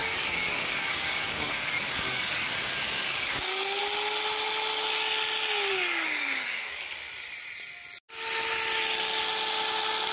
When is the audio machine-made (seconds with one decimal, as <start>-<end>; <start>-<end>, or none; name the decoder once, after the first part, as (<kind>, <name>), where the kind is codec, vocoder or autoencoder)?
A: 0.0-3.8 (codec, DAC); 5.7-6.9